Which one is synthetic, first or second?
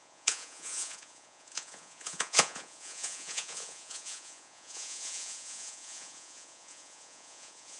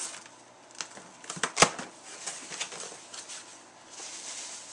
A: first